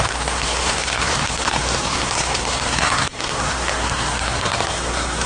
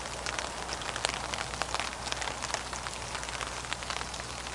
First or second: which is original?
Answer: second